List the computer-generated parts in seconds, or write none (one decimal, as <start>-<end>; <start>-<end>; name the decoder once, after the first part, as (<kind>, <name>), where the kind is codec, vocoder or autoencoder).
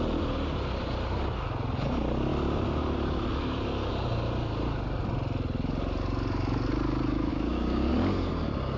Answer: 7.3-7.9 (codec, DAC)